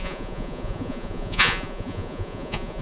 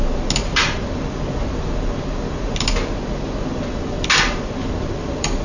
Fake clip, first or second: first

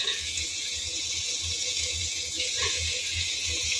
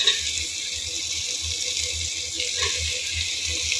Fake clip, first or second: first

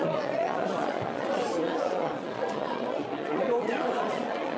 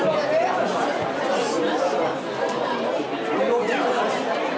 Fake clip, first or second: first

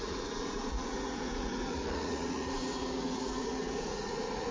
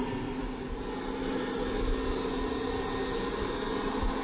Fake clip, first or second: first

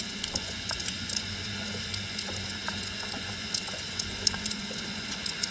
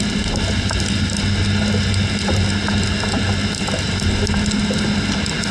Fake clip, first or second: first